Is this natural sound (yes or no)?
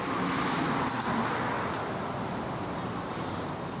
yes